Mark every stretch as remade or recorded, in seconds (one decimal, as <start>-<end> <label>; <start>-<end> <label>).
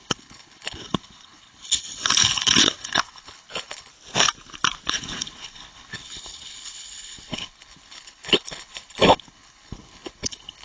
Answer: 0.0-3.9 remade; 3.9-4.9 recorded; 4.9-10.6 remade